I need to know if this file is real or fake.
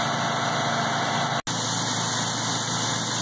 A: real